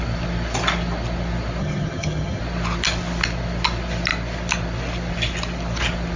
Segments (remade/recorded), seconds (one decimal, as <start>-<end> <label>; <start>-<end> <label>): 0.0-1.6 recorded; 1.6-2.4 remade; 2.4-6.2 recorded